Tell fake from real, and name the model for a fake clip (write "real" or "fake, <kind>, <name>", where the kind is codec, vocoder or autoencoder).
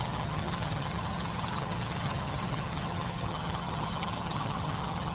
fake, vocoder, HiFi-GAN